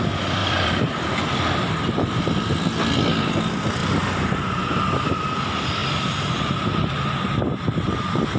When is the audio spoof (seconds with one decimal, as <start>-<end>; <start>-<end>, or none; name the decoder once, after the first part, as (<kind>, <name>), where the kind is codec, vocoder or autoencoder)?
0.4-1.7 (vocoder, BigVGAN v2); 3.8-4.4; 5.8-6.5